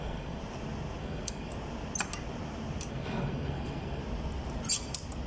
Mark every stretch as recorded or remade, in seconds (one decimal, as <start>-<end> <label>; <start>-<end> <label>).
0.0-0.4 remade; 0.4-1.0 recorded; 1.0-1.5 remade; 1.5-2.9 recorded; 2.9-4.0 remade; 4.0-5.3 recorded